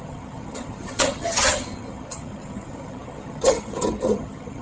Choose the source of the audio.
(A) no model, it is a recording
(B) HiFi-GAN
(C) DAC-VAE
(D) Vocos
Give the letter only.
B